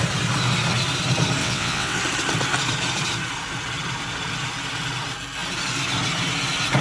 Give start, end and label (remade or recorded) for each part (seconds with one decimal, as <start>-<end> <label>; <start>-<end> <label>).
0.0-1.4 recorded; 1.4-2.0 remade; 2.0-6.8 recorded